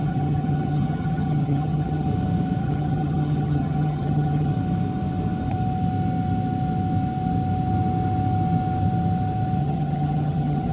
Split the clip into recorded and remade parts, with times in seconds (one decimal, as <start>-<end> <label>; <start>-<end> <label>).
0.0-2.1 remade; 2.1-2.6 recorded; 2.6-4.5 remade; 4.5-9.6 recorded; 9.6-10.7 remade